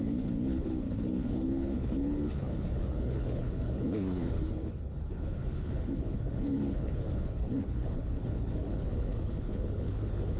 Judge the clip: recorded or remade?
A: remade